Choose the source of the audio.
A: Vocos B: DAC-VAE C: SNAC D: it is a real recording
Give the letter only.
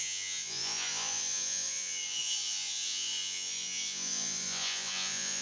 A